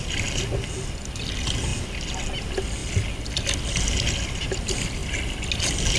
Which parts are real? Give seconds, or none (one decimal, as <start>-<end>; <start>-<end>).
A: 0.0-6.0